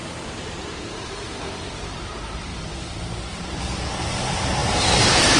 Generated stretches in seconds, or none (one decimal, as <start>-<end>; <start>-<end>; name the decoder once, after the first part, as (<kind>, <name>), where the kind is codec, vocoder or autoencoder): 0.0-2.1 (vocoder, BigVGAN v2); 2.5-3.6

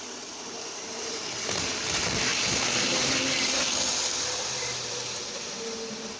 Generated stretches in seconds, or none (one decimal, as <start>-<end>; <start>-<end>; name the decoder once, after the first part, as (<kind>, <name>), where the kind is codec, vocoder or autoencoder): 0.0-2.3 (vocoder, BigVGAN v2)

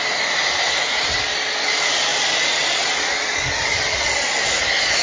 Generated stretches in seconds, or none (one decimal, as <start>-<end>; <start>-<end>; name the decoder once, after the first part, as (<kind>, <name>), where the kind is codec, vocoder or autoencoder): 0.4-1.0 (vocoder, BigVGAN v2); 2.1-2.9

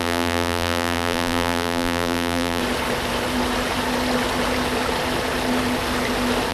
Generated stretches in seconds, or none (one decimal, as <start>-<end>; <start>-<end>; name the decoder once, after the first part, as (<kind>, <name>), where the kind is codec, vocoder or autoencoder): 0.0-2.6 (vocoder, BigVGAN v2)

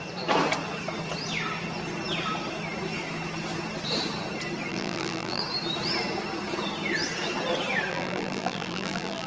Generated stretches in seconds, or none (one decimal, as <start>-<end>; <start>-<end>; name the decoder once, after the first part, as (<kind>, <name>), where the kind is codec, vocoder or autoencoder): 4.7-5.4 (vocoder, BigVGAN v2); 7.9-9.3

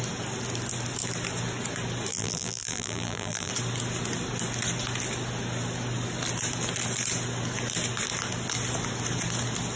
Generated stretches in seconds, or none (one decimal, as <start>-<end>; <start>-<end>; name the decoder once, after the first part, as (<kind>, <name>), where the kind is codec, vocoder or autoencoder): 2.1-3.5 (vocoder, BigVGAN v2)